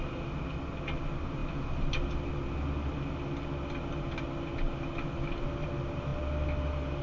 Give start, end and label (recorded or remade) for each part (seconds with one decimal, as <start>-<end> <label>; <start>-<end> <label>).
0.0-7.0 recorded